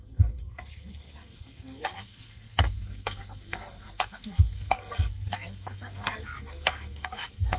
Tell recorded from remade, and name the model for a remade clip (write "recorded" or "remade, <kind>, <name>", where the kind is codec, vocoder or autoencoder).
remade, codec, SNAC